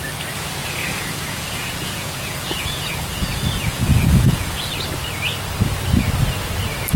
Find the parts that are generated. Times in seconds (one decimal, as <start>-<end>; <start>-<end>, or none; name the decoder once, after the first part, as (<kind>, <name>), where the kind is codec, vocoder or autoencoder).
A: 0.6-4.7 (vocoder, Vocos)